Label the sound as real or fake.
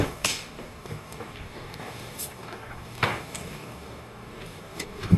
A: fake